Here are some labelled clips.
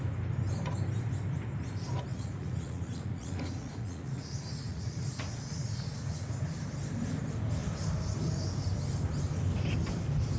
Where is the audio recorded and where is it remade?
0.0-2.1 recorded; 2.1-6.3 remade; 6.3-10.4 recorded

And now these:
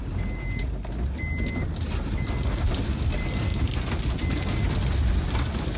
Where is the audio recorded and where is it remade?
0.0-5.8 recorded

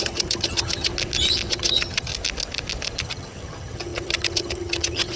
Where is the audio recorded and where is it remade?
0.0-0.9 remade; 0.9-1.5 recorded; 1.5-2.1 remade; 2.1-3.0 recorded; 3.0-5.2 remade

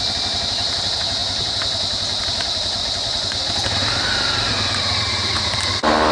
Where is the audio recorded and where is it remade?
0.0-2.8 recorded; 2.8-3.4 remade; 3.4-6.1 recorded

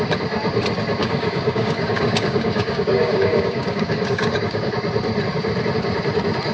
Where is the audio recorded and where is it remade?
0.0-1.0 recorded; 1.0-4.7 remade; 4.7-6.5 recorded

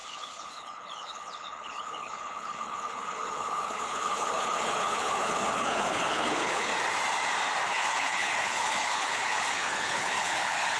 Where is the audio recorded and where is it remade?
0.0-6.7 remade; 6.7-7.7 recorded; 7.7-10.8 remade